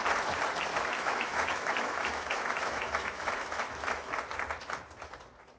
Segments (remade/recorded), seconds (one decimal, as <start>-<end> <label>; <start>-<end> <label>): 0.0-0.7 recorded; 0.7-4.1 remade; 4.1-5.6 recorded